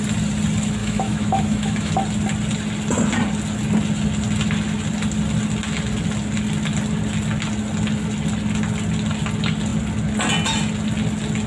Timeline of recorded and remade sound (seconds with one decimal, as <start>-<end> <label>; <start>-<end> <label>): 0.0-0.8 recorded; 0.8-1.9 remade; 1.9-11.5 recorded